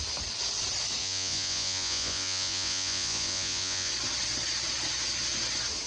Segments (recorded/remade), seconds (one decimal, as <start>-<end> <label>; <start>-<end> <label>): 0.0-1.0 recorded; 1.0-3.9 remade; 3.9-5.9 recorded